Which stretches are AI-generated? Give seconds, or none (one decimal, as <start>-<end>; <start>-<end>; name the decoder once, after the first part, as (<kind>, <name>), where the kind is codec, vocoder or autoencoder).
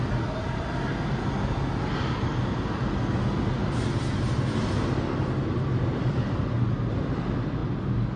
none